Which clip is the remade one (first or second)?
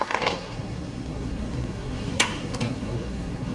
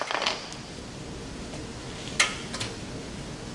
first